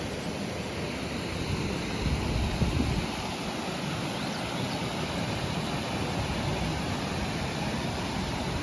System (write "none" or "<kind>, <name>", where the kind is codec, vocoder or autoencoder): none